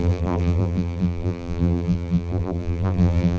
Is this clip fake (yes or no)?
yes